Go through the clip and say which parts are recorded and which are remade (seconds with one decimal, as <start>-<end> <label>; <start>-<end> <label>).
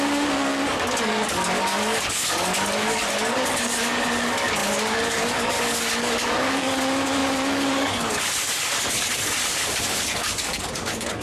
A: 0.0-11.2 remade